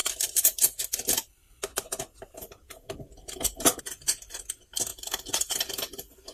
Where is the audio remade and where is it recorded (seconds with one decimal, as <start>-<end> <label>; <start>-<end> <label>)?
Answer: 0.0-4.9 recorded; 4.9-5.6 remade; 5.6-6.3 recorded